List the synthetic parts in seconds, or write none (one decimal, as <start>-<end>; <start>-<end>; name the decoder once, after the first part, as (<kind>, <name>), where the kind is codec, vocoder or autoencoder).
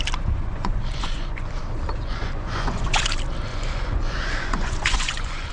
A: 0.5-1.6 (vocoder, Vocos); 2.0-3.0; 3.5-5.5